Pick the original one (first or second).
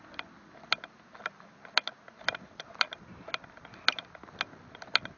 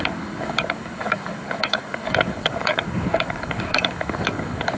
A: first